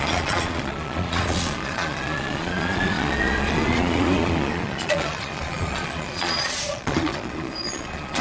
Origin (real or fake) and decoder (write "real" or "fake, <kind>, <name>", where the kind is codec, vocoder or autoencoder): fake, vocoder, Vocos